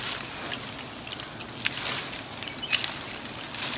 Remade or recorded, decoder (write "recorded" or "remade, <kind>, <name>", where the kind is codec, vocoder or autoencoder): recorded